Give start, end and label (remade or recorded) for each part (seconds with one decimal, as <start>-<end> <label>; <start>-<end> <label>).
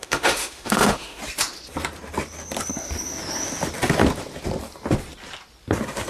0.0-1.2 remade; 1.2-6.1 recorded